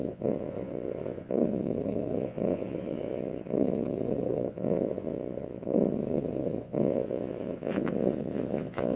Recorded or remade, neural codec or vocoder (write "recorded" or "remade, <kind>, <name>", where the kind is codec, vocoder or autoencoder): remade, vocoder, Vocos